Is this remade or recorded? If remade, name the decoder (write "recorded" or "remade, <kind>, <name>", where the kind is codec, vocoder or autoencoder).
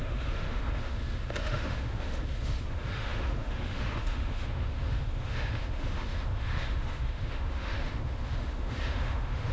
remade, autoencoder, DAC-VAE